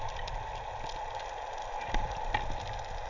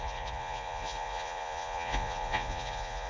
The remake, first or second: second